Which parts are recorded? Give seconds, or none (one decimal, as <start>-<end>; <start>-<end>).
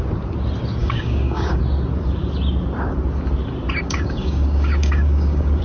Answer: 0.0-0.8; 1.6-3.8